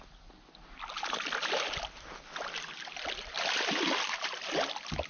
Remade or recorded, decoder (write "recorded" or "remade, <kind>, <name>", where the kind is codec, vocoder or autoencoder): recorded